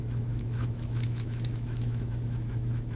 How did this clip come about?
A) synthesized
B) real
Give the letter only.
A